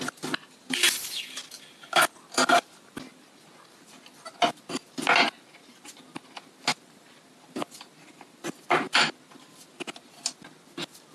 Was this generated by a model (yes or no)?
no